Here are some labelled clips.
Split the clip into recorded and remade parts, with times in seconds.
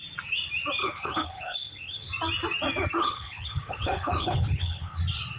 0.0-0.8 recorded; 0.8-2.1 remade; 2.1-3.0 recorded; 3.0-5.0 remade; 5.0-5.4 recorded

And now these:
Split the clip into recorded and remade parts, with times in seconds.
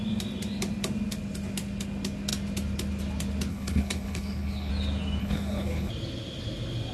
0.0-3.5 recorded; 3.5-4.7 remade; 4.7-5.2 recorded; 5.2-5.9 remade; 5.9-6.9 recorded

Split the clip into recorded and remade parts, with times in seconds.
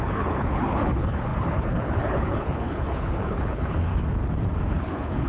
0.0-3.9 remade; 3.9-4.7 recorded; 4.7-5.3 remade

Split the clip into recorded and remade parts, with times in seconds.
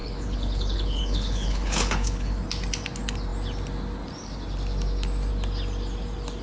0.0-2.4 remade; 2.4-6.4 recorded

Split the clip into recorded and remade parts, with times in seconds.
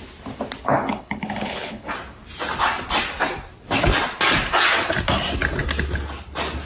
0.0-0.6 recorded; 0.6-1.9 remade; 1.9-6.7 recorded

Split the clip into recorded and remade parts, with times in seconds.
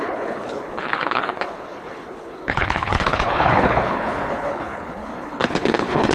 0.0-6.1 remade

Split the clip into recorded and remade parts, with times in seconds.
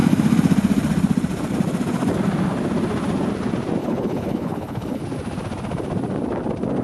0.0-3.8 recorded; 3.8-5.0 remade; 5.0-6.8 recorded